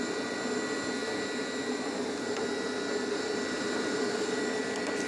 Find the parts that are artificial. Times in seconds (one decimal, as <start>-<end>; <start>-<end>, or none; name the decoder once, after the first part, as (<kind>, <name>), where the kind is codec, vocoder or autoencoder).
none